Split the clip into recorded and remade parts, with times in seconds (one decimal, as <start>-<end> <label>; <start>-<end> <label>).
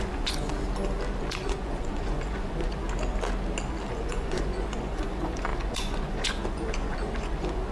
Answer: 0.0-0.5 remade; 0.5-1.2 recorded; 1.2-2.8 remade; 2.8-3.9 recorded; 3.9-7.7 remade